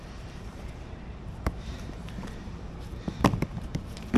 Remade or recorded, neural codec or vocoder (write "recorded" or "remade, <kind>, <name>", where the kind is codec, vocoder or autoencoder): remade, vocoder, BigVGAN v2